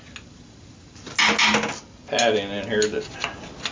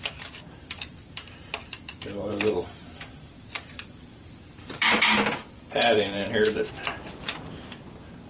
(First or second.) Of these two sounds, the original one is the first